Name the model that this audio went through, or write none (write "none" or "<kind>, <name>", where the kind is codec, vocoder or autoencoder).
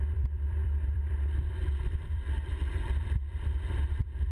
vocoder, BigVGAN v2